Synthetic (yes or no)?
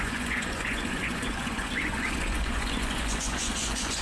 yes